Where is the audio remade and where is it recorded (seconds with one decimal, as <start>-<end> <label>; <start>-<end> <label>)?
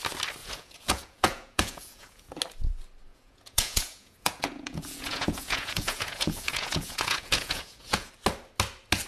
0.0-0.4 recorded; 0.4-2.4 remade; 2.4-3.1 recorded; 3.1-8.1 remade; 8.1-9.1 recorded